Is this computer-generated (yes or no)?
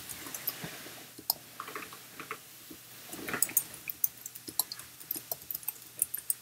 no